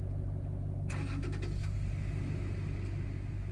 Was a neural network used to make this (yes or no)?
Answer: no